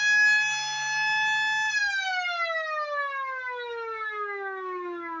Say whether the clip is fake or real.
real